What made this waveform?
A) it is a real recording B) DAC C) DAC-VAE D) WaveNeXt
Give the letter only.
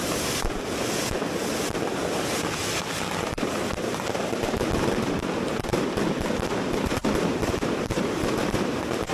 A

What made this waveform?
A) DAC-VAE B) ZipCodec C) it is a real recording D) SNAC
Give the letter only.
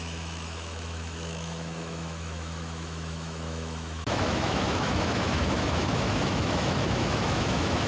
A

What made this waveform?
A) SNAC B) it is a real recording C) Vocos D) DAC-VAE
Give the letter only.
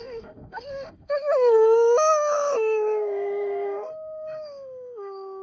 D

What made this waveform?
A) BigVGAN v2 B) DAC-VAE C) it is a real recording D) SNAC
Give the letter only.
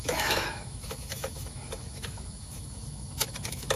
B